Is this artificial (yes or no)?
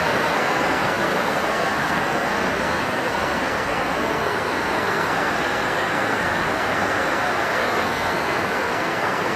yes